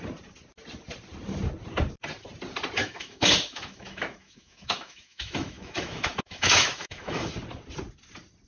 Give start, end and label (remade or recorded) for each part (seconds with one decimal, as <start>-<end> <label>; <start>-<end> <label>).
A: 0.0-2.8 recorded; 2.8-7.3 remade; 7.3-8.5 recorded